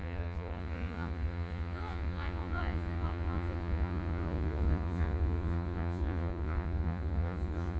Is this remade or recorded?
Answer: remade